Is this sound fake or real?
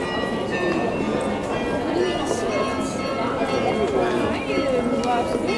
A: real